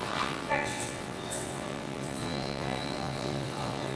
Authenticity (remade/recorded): remade